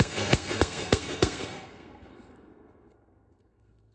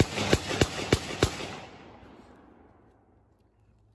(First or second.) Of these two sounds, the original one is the second